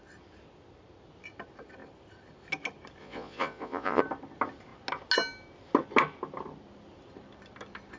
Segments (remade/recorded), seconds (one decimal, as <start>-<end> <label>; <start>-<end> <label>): 0.0-3.0 recorded; 3.0-4.0 remade; 4.0-8.0 recorded